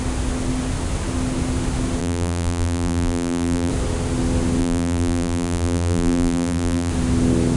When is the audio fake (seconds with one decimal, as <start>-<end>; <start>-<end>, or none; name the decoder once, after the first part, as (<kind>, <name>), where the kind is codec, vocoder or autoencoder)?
2.0-3.7 (vocoder, BigVGAN v2); 4.6-6.9